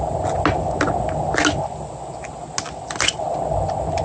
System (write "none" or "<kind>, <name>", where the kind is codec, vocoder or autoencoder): none